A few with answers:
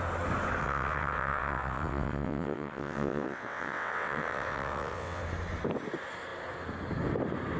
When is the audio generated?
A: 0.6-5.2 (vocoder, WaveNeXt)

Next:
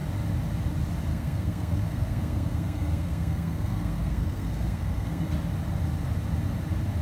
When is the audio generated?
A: 1.1-5.3 (codec, SNAC)

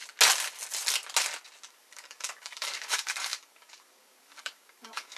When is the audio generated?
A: 1.7-5.2 (codec, DAC)

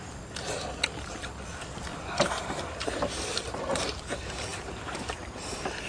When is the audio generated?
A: 1.9-4.0 (vocoder, BigVGAN v2); 4.5-5.9

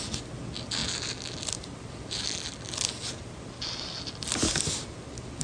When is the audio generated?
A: none